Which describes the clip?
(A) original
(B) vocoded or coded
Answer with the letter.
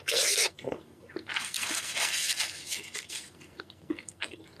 B